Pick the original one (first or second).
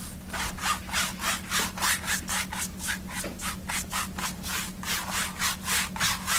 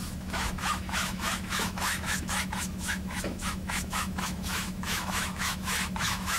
first